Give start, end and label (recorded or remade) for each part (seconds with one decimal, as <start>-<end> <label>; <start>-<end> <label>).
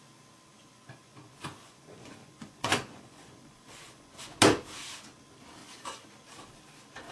0.0-0.5 recorded; 0.5-4.3 remade; 4.3-5.6 recorded; 5.6-6.1 remade; 6.1-7.1 recorded